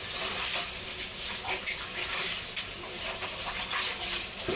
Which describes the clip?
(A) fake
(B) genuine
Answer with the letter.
B